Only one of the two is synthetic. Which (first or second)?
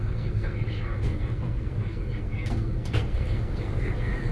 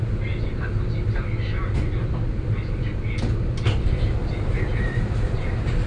first